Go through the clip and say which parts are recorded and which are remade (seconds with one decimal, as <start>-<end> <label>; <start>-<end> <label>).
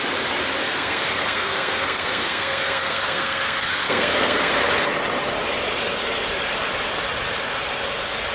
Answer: 0.0-0.6 recorded; 0.6-4.5 remade; 4.5-8.3 recorded